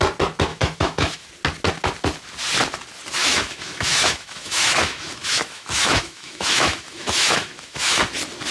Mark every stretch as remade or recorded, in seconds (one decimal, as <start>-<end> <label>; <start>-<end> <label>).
0.0-0.5 recorded; 0.5-1.3 remade; 1.3-3.2 recorded; 3.2-8.0 remade; 8.0-8.5 recorded